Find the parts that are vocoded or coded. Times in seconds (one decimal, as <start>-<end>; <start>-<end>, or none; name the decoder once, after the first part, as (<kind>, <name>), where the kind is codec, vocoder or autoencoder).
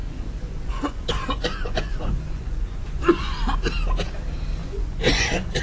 0.0-3.4 (vocoder, Vocos); 4.6-5.6